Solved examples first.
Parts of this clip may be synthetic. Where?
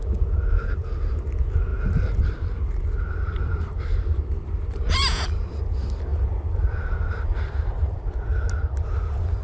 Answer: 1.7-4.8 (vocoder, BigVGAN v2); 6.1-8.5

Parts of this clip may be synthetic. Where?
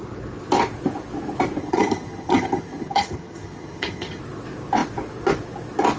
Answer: 1.6-4.2 (vocoder, HiFi-GAN)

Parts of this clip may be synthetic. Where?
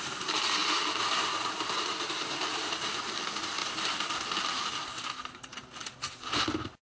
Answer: 0.0-0.6 (vocoder, BigVGAN v2); 2.7-3.6; 5.3-5.8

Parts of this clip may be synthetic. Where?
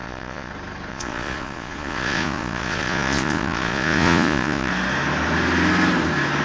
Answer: 0.0-0.5 (vocoder, Vocos); 0.9-4.7